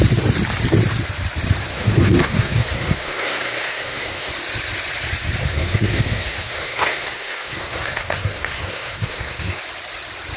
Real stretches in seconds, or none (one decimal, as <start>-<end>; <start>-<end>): 0.0-1.7; 4.3-5.4; 9.6-10.4